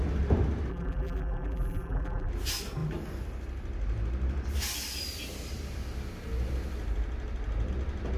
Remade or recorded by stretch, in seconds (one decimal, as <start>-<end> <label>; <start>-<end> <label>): 0.0-0.7 recorded; 0.7-2.3 remade; 2.3-8.2 recorded